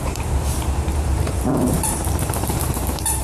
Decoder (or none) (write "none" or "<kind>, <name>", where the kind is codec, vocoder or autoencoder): vocoder, BigVGAN v2